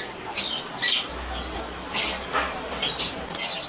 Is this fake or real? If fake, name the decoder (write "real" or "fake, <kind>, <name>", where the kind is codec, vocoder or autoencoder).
real